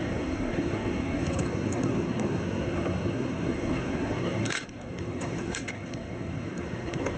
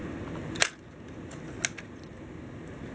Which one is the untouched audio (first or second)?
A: second